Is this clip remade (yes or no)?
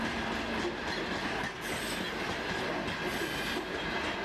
no